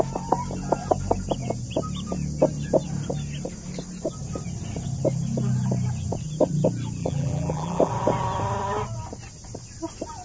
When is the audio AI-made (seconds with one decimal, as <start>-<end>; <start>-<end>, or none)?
7.0-7.9